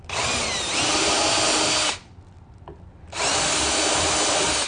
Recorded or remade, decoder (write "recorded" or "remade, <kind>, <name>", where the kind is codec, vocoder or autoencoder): recorded